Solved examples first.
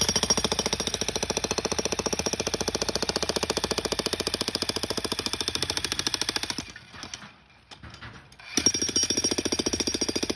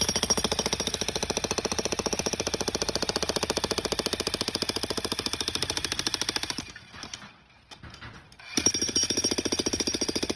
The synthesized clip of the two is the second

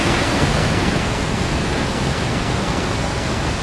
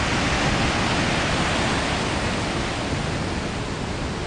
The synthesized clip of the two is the first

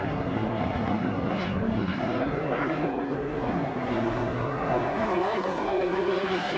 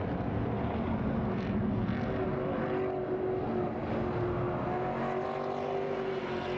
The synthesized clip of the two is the first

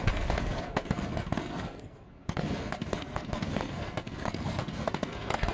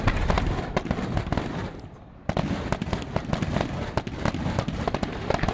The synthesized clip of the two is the first